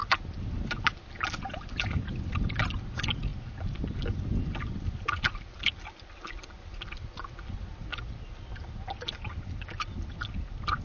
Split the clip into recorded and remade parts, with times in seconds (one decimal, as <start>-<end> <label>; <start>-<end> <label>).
0.0-10.8 recorded